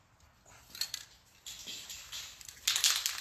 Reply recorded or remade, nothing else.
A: recorded